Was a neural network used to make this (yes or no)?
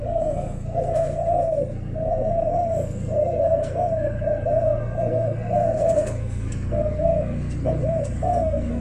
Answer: yes